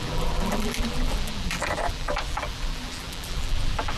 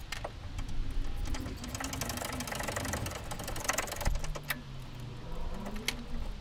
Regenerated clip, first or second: first